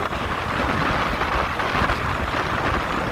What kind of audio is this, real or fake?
real